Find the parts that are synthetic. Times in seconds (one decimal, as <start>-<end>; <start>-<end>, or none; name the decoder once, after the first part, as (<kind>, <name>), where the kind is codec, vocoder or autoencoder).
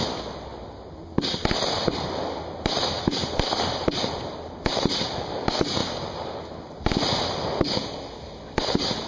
none